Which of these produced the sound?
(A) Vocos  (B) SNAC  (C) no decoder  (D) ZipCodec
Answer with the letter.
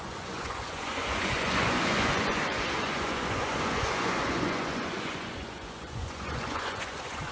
A